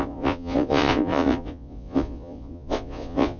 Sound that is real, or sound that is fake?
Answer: fake